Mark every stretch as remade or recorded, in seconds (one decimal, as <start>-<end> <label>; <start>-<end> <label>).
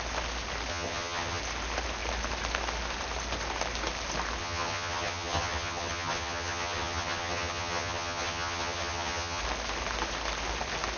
0.0-0.7 recorded; 0.7-1.4 remade; 1.4-4.4 recorded; 4.4-9.4 remade; 9.4-11.0 recorded